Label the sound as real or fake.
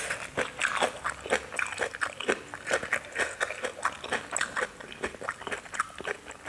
real